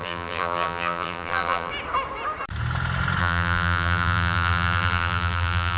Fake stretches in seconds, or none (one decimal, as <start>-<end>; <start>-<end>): 0.0-1.7; 3.2-5.8